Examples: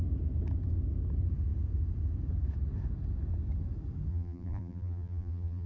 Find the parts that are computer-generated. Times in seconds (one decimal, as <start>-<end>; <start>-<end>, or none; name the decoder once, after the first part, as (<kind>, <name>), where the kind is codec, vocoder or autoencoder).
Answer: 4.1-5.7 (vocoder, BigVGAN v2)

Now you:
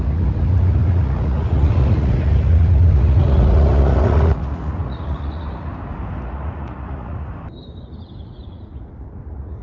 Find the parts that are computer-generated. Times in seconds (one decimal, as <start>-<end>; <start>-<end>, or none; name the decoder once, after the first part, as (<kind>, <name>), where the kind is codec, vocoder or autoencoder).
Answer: 0.0-5.7 (vocoder, Vocos); 6.2-7.3; 8.2-9.6

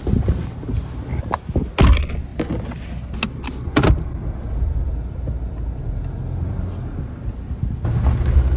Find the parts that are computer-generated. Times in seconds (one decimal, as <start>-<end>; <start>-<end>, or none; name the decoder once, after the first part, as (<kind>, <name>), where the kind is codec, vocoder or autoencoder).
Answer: none

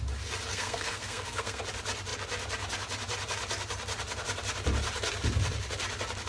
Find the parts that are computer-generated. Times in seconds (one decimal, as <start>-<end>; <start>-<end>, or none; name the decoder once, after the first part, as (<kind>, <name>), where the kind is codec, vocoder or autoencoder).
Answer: 0.5-1.6 (codec, SNAC)

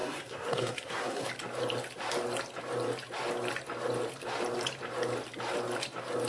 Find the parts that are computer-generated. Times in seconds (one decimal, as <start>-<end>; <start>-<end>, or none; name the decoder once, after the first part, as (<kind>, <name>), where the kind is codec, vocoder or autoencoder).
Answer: 0.0-1.3 (codec, SNAC)